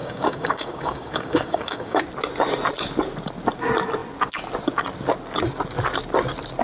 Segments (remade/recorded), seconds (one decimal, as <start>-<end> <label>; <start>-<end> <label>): 0.0-2.0 remade; 2.0-6.6 recorded